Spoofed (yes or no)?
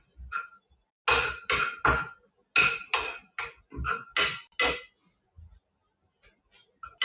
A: no